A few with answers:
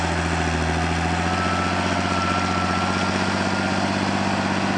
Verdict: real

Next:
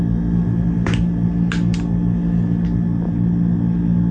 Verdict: real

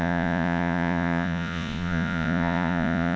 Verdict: fake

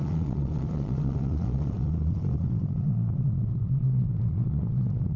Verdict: fake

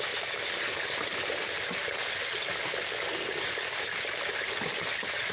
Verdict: real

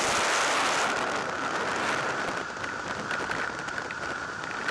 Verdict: real